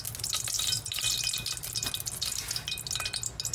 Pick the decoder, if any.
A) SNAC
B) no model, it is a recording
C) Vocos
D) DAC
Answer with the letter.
B